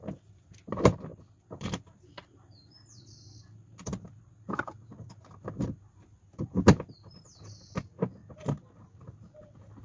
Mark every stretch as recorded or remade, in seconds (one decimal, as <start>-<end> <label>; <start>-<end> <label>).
0.0-9.8 recorded